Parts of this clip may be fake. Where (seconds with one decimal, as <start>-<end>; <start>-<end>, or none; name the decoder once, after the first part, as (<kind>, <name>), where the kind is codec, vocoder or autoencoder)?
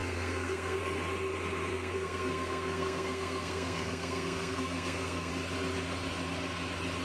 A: 0.0-0.8 (codec, SNAC); 1.7-5.3